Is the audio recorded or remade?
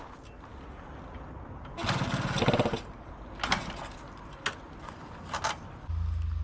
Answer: recorded